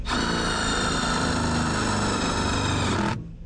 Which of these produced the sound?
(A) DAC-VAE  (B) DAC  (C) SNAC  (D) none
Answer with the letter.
D